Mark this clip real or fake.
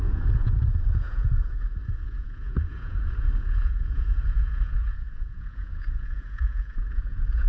fake